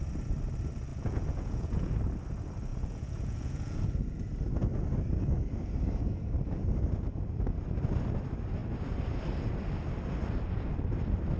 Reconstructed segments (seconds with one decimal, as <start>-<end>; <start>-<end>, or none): 0.9-2.0; 2.7-4.3